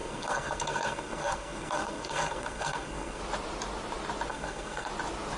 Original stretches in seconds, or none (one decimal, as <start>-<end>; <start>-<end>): 3.2-4.3; 4.9-5.4